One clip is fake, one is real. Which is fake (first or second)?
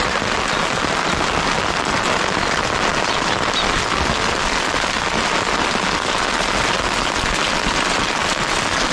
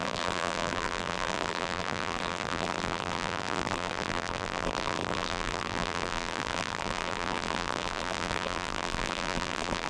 second